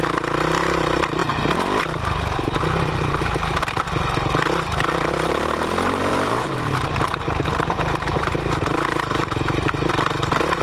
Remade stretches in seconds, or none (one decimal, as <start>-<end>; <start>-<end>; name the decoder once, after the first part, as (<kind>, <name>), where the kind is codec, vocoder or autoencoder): 6.1-9.9 (vocoder, BigVGAN v2)